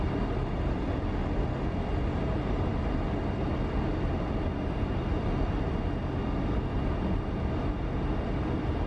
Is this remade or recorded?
recorded